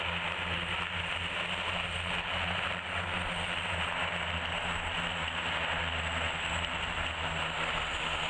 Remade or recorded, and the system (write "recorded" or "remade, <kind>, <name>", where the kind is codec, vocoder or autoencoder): recorded